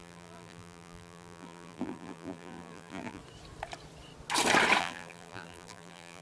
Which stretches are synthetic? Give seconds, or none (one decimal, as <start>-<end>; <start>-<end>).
0.0-3.2; 4.8-6.2